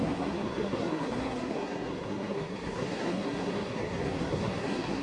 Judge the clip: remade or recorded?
remade